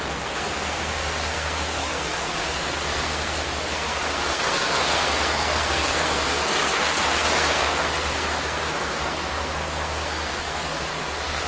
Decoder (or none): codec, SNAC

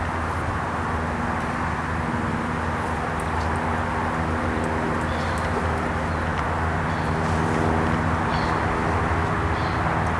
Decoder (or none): none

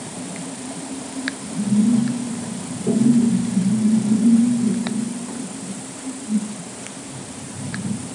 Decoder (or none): vocoder, BigVGAN v2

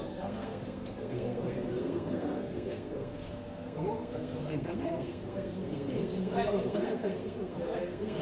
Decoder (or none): codec, SNAC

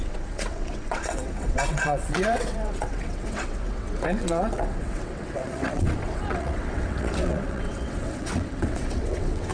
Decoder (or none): vocoder, WaveNeXt